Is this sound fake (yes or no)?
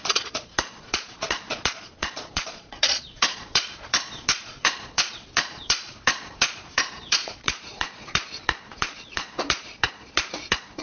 yes